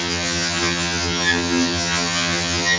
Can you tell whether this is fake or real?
fake